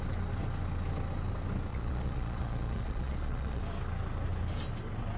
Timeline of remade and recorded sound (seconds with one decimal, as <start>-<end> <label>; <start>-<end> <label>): 0.0-1.7 recorded; 1.7-3.6 remade; 3.6-5.2 recorded